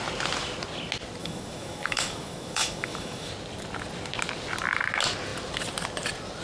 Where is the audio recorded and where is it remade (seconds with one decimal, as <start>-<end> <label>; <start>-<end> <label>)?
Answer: 0.0-1.2 recorded; 1.2-3.3 remade; 3.3-6.4 recorded